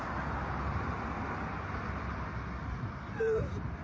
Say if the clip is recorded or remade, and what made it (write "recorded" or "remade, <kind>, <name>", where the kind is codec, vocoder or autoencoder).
recorded